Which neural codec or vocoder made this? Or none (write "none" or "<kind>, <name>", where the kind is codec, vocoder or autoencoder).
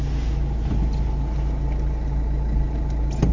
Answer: none